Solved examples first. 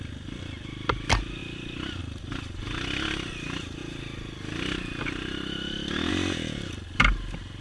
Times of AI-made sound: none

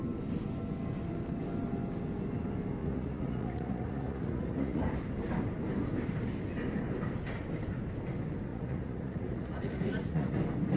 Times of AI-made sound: 2.8-4.8; 8.5-10.4

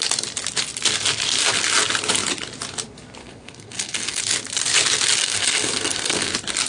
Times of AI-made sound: 3.2-4.2; 5.2-6.3

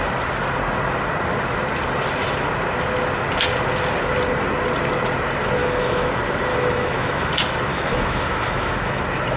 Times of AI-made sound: 5.6-6.1; 6.5-7.3; 7.7-9.0

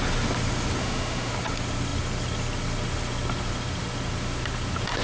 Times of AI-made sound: 0.8-1.3

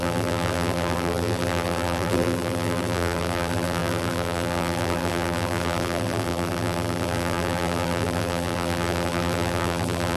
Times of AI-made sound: 0.0-10.2

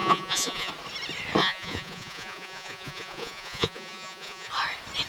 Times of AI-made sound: 0.0-0.7; 1.4-4.5

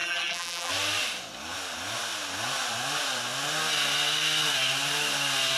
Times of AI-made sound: 0.0-0.7